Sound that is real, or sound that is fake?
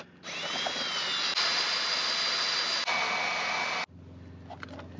real